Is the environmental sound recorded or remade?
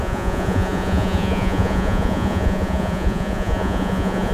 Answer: remade